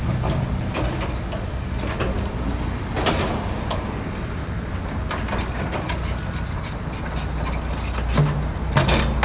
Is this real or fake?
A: real